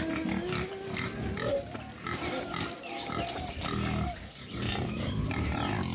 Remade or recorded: recorded